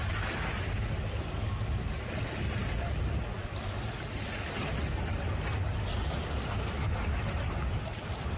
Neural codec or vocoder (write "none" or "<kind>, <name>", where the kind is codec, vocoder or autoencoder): none